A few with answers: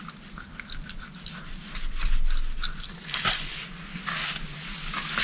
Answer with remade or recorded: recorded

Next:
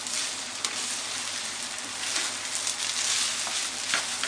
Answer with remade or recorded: recorded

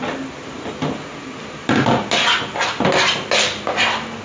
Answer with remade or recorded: recorded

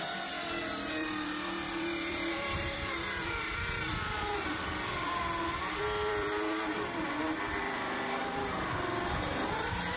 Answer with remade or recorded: remade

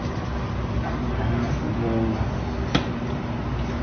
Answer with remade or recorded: recorded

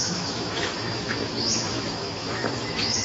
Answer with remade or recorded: remade